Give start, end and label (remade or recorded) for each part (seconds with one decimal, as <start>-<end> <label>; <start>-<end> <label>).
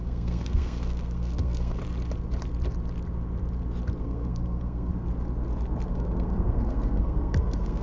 0.0-1.8 remade; 1.8-4.0 recorded; 4.0-4.9 remade; 4.9-5.9 recorded; 5.9-7.8 remade